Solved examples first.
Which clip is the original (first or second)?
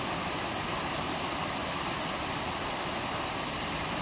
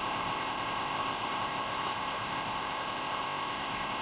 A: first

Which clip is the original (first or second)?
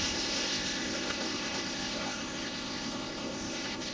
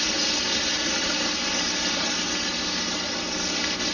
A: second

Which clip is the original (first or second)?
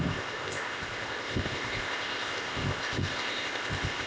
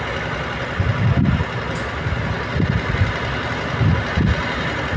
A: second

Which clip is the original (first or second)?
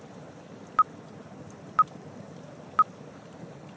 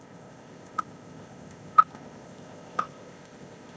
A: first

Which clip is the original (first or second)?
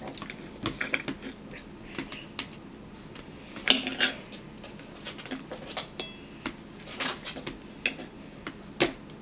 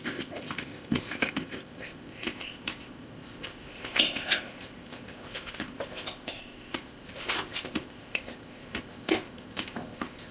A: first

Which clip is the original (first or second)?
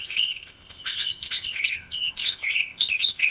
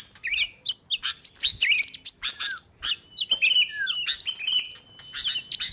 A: second